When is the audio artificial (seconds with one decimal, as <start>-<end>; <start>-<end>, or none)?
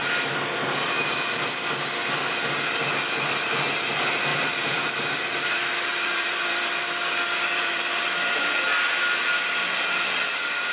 4.3-4.9; 5.9-8.0